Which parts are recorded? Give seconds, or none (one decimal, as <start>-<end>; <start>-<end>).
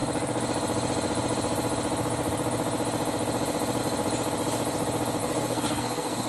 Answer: 0.0-5.2